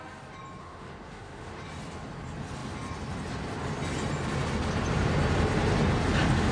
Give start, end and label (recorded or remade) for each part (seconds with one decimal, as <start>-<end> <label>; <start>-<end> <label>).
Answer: 0.0-0.6 recorded; 0.6-1.6 remade; 1.6-6.5 recorded